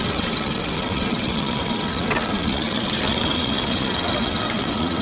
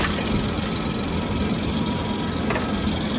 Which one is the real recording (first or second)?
second